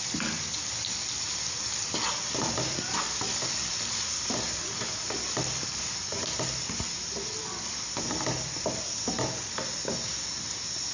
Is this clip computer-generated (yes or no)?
no